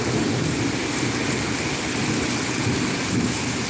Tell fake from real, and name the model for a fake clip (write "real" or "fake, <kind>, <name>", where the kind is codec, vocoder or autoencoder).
real